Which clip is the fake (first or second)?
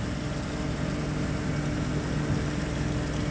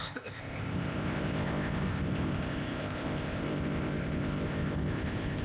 second